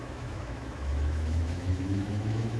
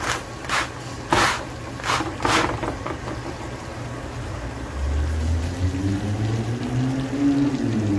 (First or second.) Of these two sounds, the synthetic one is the first